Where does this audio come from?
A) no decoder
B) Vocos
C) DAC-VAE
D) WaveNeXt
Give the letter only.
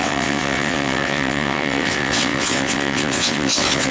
D